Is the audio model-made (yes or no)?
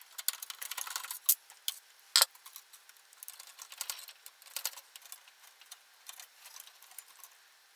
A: no